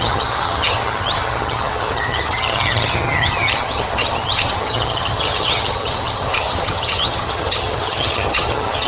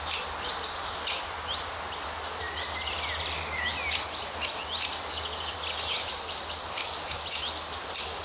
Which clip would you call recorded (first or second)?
second